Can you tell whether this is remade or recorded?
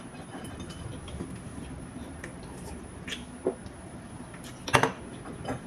recorded